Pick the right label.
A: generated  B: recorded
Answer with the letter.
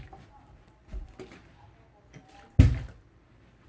B